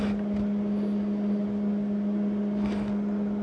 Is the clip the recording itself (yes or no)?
yes